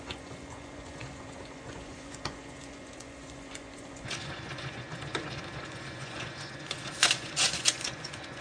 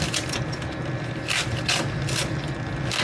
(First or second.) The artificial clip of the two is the first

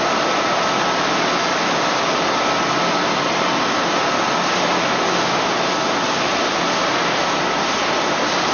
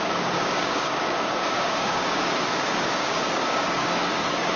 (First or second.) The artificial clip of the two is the second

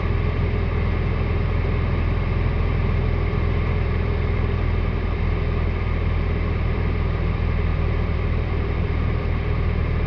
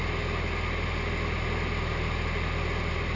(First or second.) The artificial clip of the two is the first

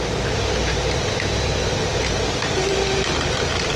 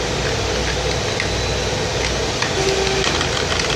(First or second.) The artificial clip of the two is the first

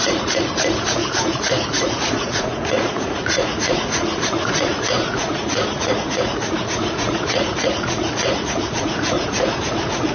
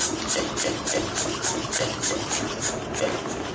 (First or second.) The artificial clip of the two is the first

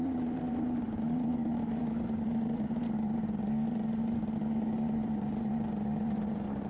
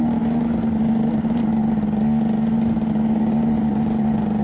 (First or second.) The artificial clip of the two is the first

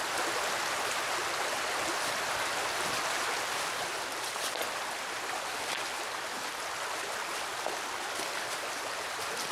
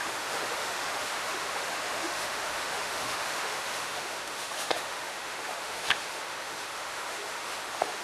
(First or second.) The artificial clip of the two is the second